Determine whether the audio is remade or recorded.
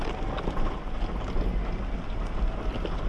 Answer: recorded